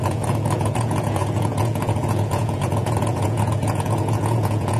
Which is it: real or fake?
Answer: fake